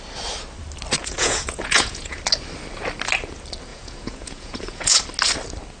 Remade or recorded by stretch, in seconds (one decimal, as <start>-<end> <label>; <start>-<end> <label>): 0.0-1.0 recorded; 1.0-2.2 remade; 2.2-3.7 recorded; 3.7-5.0 remade; 5.0-5.8 recorded